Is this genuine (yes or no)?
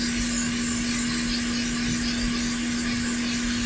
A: yes